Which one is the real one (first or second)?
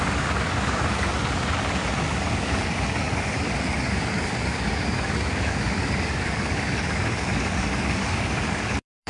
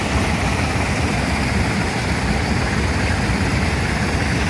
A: second